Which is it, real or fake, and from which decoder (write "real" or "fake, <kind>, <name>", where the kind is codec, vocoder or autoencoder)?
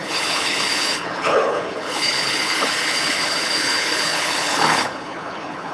fake, codec, HILCodec